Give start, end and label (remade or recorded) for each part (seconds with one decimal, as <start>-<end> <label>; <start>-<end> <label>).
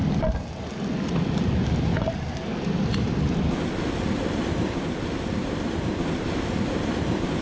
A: 0.0-1.3 recorded; 1.3-1.9 remade; 1.9-3.8 recorded; 3.8-7.4 remade